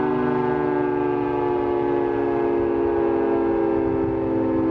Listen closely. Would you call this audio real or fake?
real